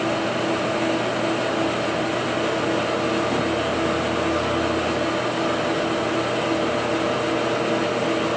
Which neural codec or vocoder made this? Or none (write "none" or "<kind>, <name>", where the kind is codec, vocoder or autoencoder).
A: none